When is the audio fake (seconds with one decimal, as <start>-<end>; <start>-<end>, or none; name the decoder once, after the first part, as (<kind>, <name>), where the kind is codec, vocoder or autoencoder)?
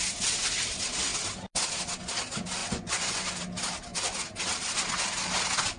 2.6-3.3 (vocoder, Vocos)